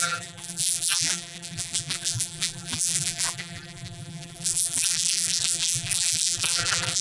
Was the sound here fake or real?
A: fake